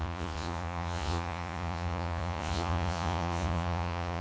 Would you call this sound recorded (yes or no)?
no